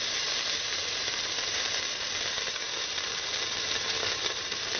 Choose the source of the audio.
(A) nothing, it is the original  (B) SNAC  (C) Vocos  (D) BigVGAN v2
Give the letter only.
D